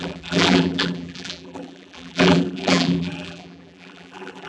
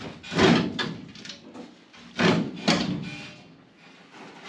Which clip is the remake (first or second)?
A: first